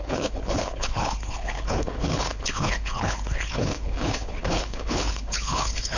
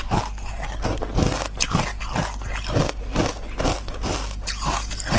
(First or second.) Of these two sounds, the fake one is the first